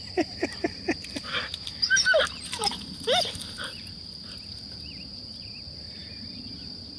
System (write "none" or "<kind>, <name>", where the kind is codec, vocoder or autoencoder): none